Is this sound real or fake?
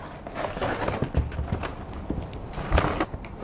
real